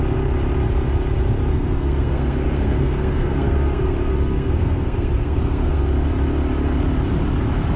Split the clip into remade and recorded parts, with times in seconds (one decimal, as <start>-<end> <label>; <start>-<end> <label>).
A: 0.0-1.5 recorded; 1.5-5.9 remade; 5.9-7.8 recorded